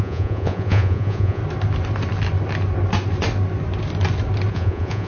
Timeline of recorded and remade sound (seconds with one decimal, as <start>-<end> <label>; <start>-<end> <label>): 0.0-1.4 remade; 1.4-4.5 recorded; 4.5-5.1 remade